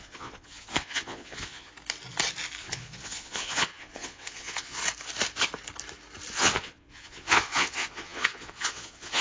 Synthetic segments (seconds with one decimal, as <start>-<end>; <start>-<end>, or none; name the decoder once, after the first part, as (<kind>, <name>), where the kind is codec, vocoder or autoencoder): 0.0-1.7 (vocoder, Vocos); 2.6-4.8; 6.3-9.2